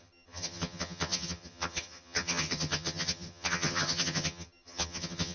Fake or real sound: fake